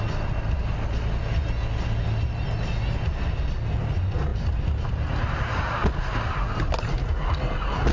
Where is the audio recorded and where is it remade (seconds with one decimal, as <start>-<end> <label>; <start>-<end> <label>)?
0.0-7.9 recorded